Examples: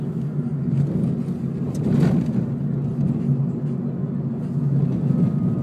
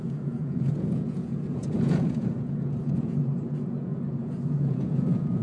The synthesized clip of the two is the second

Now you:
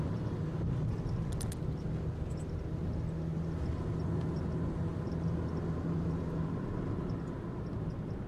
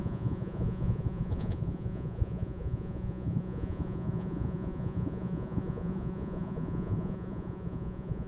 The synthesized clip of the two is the second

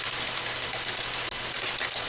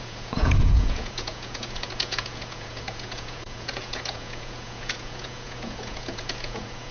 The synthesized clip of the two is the second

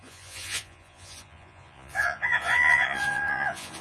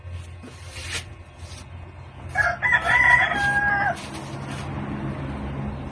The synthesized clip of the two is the first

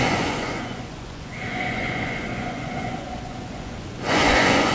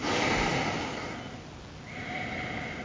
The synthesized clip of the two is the first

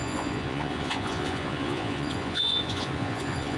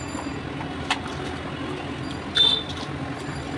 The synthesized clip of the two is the first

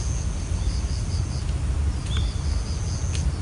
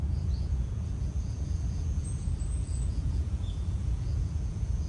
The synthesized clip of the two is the second